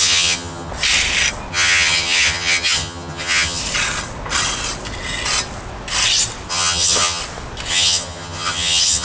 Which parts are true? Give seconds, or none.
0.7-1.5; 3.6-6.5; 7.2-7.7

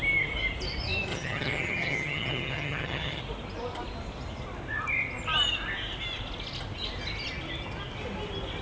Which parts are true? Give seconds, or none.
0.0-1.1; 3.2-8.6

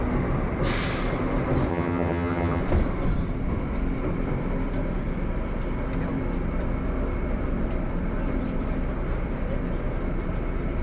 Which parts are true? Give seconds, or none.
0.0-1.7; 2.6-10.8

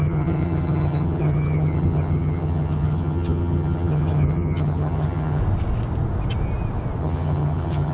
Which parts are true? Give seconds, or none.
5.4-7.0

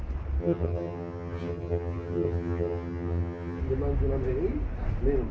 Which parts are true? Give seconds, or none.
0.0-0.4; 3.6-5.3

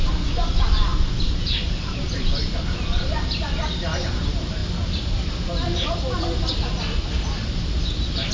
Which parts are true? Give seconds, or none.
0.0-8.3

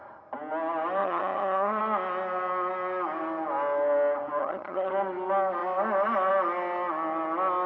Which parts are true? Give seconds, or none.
0.0-1.0; 1.8-4.4; 4.9-7.7

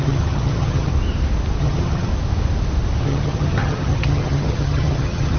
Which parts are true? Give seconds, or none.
0.9-1.6; 2.1-3.0